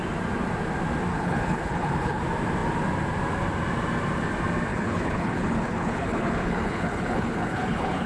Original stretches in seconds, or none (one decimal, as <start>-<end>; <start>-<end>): 0.0-1.1; 2.2-4.7